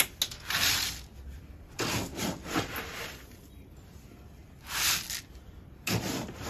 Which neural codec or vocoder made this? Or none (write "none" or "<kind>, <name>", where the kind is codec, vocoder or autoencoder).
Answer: none